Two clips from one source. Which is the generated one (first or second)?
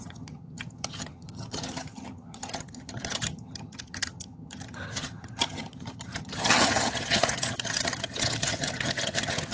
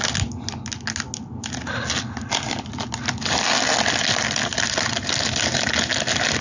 first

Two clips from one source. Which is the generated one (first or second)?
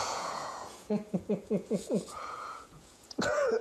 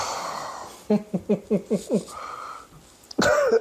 first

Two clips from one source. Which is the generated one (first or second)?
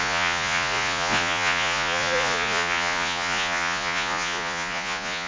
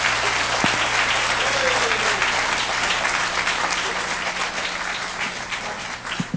first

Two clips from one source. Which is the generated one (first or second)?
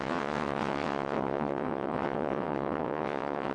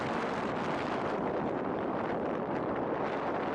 first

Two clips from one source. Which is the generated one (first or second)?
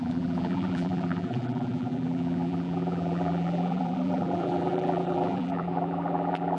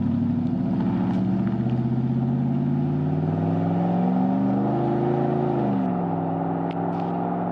first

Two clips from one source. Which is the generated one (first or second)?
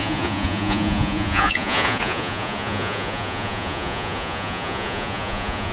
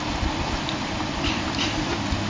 first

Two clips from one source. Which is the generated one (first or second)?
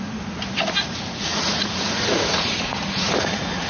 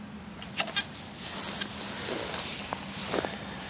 first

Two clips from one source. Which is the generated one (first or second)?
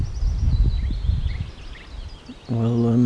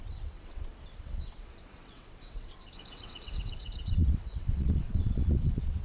second